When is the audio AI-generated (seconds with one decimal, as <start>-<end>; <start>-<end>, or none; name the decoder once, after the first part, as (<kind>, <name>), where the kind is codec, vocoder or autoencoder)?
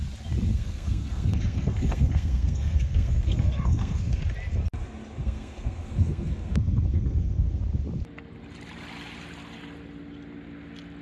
0.5-4.2 (codec, SNAC); 5.2-7.6